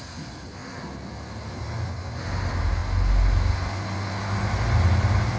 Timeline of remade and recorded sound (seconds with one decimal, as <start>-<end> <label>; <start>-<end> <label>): 0.0-5.4 recorded